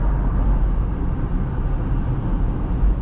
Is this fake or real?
real